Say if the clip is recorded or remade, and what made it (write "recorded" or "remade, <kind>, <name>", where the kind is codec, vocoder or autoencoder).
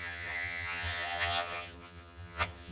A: remade, vocoder, HiFi-GAN